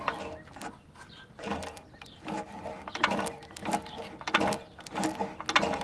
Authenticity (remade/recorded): recorded